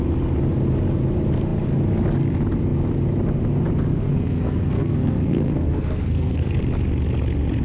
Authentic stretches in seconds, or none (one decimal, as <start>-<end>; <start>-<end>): 0.0-3.9; 6.6-7.6